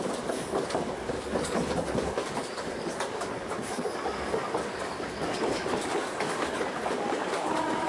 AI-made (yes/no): yes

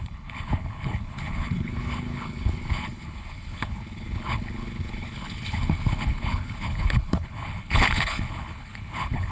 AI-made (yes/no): yes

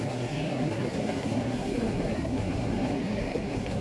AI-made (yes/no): yes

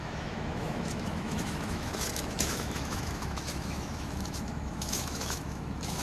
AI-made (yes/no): yes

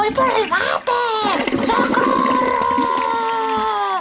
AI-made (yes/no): no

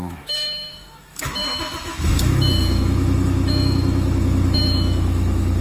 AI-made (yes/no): yes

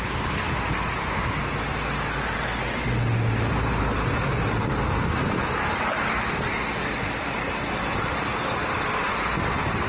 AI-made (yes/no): no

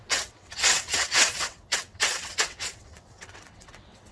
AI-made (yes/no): yes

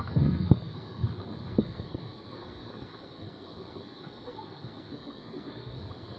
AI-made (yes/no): yes